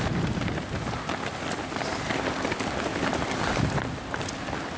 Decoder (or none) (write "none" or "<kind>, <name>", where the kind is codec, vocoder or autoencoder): none